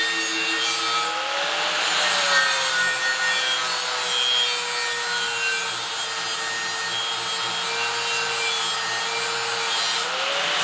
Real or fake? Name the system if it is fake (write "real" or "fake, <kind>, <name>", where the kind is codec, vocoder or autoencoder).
real